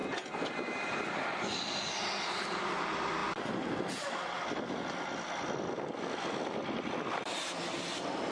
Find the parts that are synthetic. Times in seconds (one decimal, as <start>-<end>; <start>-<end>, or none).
none